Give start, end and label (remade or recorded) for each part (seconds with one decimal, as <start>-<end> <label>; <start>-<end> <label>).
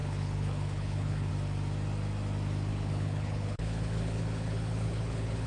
0.0-1.3 remade; 1.3-2.7 recorded; 2.7-5.5 remade